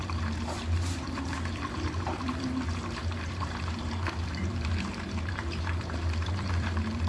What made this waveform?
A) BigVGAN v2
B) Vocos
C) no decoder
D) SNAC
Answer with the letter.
A